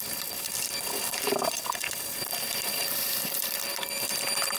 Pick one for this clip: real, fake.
fake